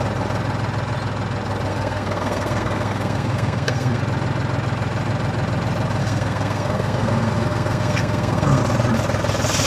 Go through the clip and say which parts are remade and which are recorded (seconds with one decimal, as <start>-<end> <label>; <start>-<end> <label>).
0.0-1.7 recorded; 1.7-4.0 remade; 4.0-6.0 recorded; 6.0-8.6 remade; 8.6-9.7 recorded